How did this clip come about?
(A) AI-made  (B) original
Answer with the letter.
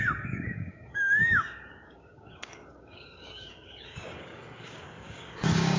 A